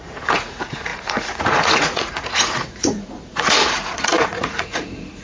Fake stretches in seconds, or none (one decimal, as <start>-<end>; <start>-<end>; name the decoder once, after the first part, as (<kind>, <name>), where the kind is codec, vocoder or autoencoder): 0.0-5.2 (vocoder, Vocos)